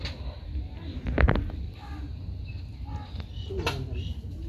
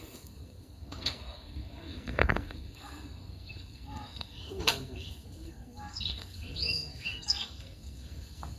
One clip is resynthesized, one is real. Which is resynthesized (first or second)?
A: second